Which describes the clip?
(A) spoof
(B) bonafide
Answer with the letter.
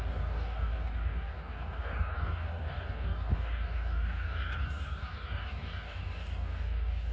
A